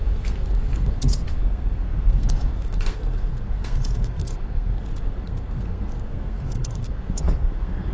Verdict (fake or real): fake